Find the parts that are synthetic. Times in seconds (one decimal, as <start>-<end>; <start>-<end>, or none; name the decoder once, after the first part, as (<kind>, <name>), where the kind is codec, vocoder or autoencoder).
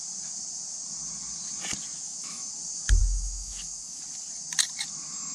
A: 1.9-2.5 (autoencoder, DAC-VAE); 3.0-4.0